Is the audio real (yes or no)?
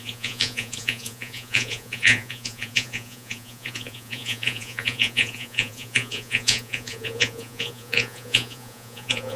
no